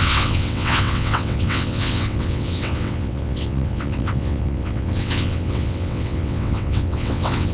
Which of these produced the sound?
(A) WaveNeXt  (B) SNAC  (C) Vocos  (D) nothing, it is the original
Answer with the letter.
A